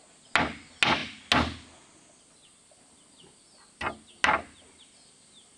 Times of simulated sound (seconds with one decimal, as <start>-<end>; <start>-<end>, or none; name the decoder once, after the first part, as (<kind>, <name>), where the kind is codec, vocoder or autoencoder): none